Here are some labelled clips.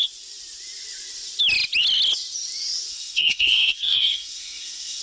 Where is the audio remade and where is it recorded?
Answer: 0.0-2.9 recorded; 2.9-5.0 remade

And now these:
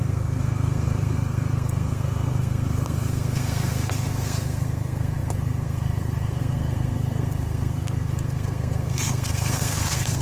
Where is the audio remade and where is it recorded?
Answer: 0.0-10.2 remade

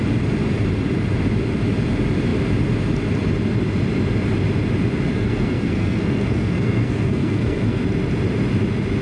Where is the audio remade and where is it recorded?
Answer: 0.0-5.1 recorded; 5.1-7.8 remade; 7.8-9.0 recorded

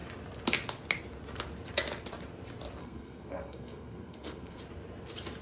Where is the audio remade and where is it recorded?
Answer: 0.0-2.8 recorded; 2.8-4.6 remade; 4.6-5.4 recorded

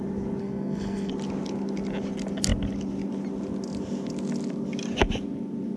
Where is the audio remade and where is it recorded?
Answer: 0.0-0.4 recorded; 0.4-1.1 remade; 1.1-5.8 recorded

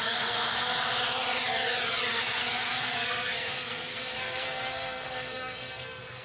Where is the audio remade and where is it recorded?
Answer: 0.0-0.7 remade; 0.7-2.1 recorded; 2.1-6.2 remade